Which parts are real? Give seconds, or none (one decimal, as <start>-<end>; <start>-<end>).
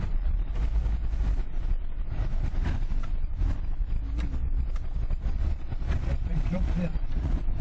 0.5-5.1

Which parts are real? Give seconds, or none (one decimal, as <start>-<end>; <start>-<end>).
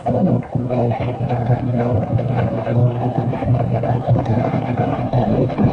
none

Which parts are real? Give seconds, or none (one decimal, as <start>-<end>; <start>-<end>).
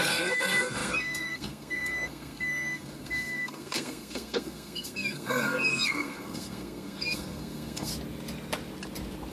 7.9-9.3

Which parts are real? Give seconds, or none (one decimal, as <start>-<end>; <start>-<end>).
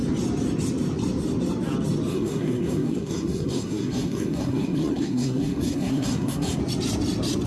0.0-2.1; 6.6-7.5